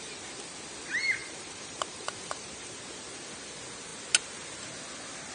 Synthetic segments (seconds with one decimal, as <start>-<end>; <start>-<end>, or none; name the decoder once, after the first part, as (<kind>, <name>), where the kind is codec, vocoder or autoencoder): 1.2-2.8 (vocoder, BigVGAN v2)